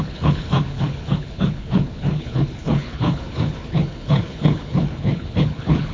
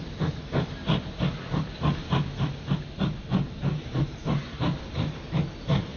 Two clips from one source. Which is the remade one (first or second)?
first